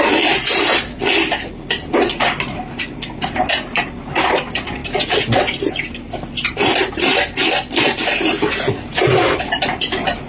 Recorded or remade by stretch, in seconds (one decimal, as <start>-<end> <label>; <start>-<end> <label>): 0.0-10.3 recorded